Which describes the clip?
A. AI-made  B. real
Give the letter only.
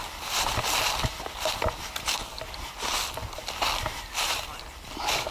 B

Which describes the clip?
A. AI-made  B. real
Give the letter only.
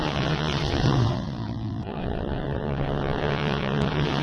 A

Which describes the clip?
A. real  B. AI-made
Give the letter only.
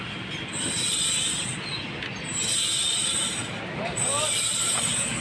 A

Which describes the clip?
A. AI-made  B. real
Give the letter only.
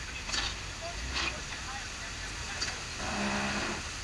B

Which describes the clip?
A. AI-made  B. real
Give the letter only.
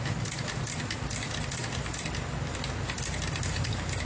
B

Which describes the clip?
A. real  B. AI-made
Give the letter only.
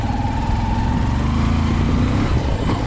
A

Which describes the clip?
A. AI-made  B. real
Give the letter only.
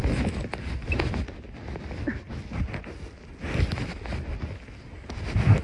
B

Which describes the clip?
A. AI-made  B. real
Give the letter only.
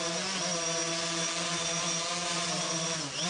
B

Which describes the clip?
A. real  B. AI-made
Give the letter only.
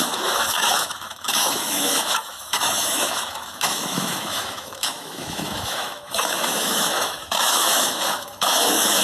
B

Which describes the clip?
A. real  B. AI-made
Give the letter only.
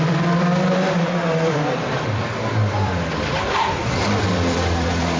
B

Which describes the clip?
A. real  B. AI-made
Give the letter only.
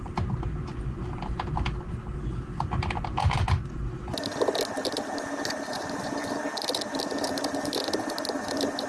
A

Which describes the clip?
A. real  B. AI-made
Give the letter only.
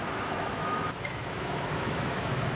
B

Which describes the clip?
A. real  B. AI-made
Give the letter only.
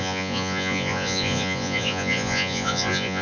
B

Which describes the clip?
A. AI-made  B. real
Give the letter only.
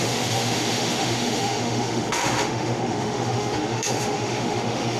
A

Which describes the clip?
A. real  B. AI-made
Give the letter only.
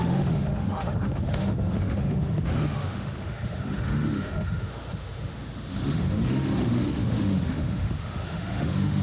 B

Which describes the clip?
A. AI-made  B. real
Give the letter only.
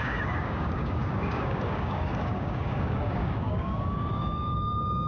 A